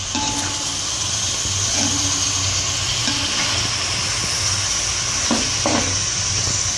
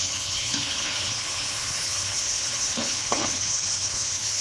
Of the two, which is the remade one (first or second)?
second